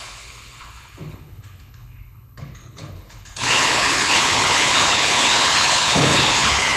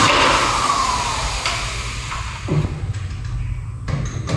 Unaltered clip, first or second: second